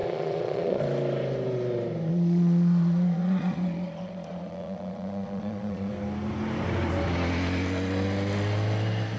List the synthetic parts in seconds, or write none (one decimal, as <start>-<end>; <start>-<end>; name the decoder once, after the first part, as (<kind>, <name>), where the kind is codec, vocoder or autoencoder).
0.0-0.8 (vocoder, Vocos); 2.1-5.9